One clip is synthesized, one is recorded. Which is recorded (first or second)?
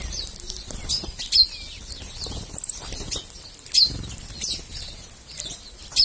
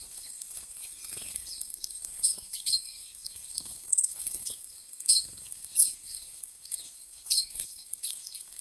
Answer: first